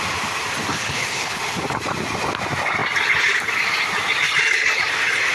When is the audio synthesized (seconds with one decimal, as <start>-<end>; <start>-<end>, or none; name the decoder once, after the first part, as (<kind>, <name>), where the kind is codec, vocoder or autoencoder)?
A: 0.7-1.4 (codec, HILCodec)